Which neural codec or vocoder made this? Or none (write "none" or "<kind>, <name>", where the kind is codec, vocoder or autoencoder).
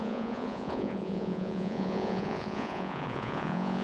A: vocoder, Vocos